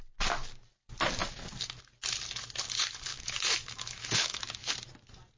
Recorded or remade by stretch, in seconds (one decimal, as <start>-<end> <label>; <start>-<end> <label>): 0.0-3.1 recorded; 3.1-4.7 remade; 4.7-5.4 recorded